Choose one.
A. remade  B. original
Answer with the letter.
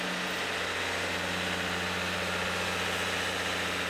B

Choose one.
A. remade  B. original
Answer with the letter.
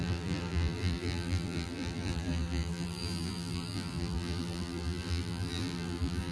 A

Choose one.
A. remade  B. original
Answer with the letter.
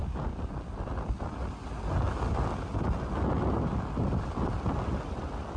B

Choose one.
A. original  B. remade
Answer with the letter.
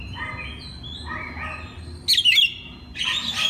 A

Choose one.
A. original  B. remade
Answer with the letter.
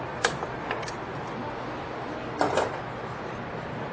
A